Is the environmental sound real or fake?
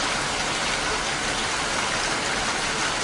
real